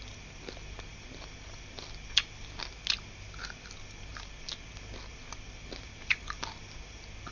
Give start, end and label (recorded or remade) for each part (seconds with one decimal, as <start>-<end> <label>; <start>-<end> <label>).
0.0-7.3 recorded